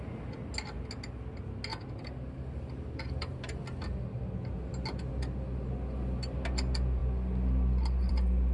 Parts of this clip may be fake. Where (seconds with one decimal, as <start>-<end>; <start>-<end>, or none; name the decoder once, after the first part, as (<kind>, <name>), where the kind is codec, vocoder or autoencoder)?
1.7-3.6 (vocoder, BigVGAN v2)